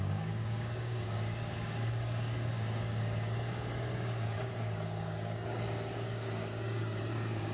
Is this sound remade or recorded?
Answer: remade